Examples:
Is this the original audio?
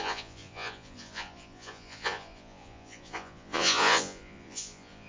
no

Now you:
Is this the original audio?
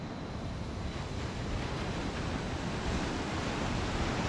yes